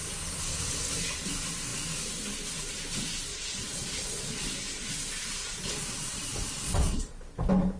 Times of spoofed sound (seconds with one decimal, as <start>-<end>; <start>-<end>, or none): 3.3-4.9; 5.4-7.1

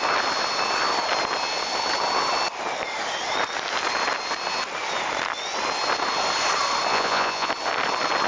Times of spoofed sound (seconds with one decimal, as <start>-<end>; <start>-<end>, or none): 6.9-7.5

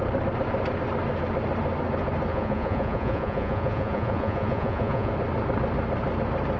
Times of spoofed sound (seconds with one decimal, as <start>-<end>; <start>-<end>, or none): 2.3-5.1

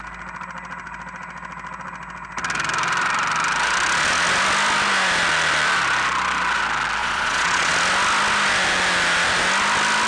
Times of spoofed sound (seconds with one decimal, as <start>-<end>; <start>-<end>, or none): 7.0-7.7

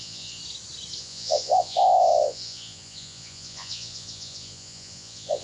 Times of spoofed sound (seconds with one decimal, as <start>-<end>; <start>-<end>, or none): 0.0-0.4; 1.0-5.4

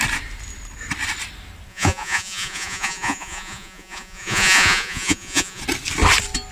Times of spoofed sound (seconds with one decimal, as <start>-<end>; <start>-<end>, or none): 1.7-5.6

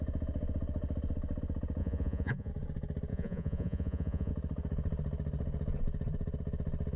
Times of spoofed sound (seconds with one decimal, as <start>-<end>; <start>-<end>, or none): 1.8-2.5; 3.1-4.3